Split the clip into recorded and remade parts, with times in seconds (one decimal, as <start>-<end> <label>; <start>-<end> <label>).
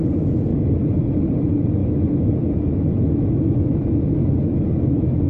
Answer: 0.0-0.5 recorded; 0.5-1.0 remade; 1.0-1.8 recorded; 1.8-5.3 remade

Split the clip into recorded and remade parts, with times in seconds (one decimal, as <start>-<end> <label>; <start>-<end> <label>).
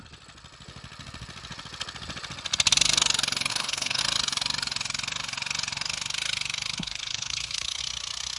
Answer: 0.0-3.5 recorded; 3.5-4.0 remade; 4.0-6.8 recorded; 6.8-7.8 remade; 7.8-8.4 recorded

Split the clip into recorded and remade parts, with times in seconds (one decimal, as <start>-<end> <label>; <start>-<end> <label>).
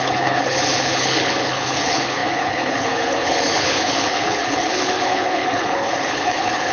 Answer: 0.0-6.7 remade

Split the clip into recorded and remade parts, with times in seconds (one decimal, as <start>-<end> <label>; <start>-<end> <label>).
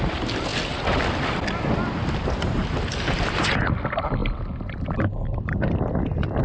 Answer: 0.0-6.4 recorded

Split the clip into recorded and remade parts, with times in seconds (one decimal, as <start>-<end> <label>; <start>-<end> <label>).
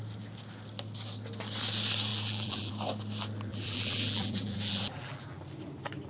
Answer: 0.0-2.1 recorded; 2.1-2.7 remade; 2.7-3.5 recorded; 3.5-5.4 remade; 5.4-6.1 recorded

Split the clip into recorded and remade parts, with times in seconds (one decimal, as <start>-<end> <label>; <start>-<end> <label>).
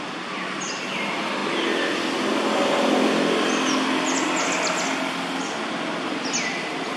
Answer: 0.0-7.0 recorded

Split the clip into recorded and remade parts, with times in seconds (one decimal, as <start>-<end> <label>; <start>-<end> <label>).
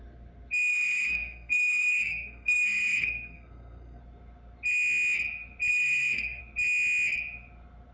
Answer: 0.0-0.7 recorded; 0.7-4.0 remade; 4.0-5.7 recorded; 5.7-6.4 remade; 6.4-7.9 recorded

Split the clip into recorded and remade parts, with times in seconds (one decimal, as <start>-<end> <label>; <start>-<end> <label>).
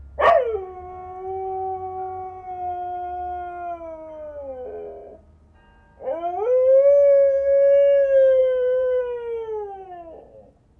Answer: 0.0-8.4 recorded; 8.4-9.0 remade; 9.0-10.8 recorded